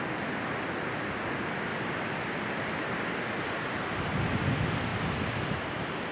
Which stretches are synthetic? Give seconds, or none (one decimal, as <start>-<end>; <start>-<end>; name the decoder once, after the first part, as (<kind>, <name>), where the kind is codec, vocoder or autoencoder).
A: 1.7-4.0 (vocoder, BigVGAN v2); 4.9-5.6